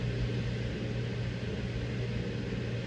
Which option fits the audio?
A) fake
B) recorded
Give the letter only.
B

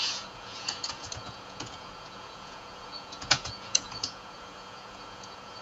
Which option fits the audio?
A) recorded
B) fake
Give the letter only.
B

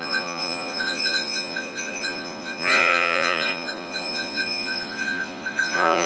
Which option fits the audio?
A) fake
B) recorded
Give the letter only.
A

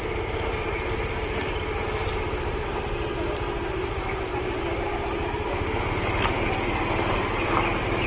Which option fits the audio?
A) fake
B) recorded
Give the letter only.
B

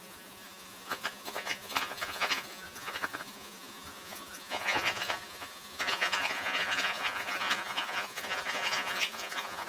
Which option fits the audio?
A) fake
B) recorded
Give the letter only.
A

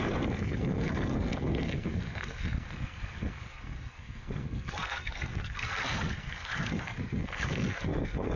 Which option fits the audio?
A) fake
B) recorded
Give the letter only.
A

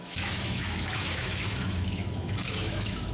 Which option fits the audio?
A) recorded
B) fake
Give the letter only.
B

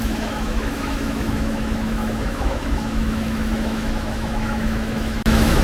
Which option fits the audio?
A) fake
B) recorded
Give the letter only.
A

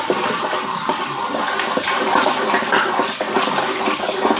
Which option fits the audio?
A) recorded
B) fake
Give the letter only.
B